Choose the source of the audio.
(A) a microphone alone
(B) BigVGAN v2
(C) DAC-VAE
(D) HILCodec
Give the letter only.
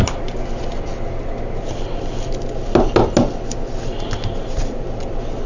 A